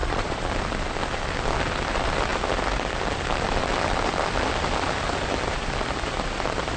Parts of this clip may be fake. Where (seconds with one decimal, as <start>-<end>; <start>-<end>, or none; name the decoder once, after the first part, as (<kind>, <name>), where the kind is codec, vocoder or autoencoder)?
0.0-0.5 (vocoder, Vocos)